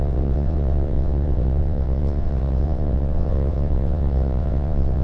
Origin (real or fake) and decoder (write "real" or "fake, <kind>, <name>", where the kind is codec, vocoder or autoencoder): fake, vocoder, WaveNeXt